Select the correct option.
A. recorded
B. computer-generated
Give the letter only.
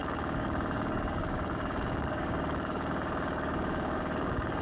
B